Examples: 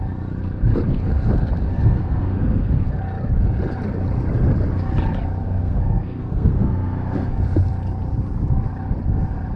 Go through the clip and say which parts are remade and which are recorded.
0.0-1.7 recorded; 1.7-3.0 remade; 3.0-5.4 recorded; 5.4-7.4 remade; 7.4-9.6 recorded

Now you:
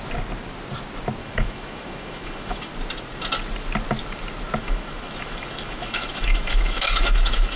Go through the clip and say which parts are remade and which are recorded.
0.0-1.2 recorded; 1.2-2.7 remade; 2.7-4.6 recorded; 4.6-7.6 remade

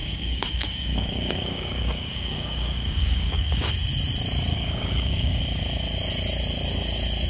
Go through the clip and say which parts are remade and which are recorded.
0.0-3.7 remade; 3.7-4.5 recorded; 4.5-5.4 remade; 5.4-7.3 recorded

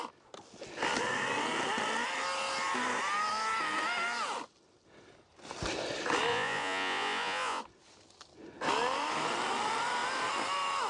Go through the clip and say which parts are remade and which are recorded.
0.0-6.3 recorded; 6.3-7.6 remade; 7.6-10.9 recorded

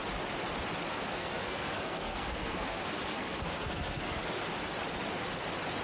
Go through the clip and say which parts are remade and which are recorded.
0.0-0.9 recorded; 0.9-4.4 remade; 4.4-5.8 recorded